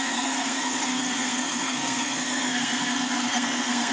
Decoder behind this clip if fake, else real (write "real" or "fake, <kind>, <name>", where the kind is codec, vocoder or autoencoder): fake, codec, SNAC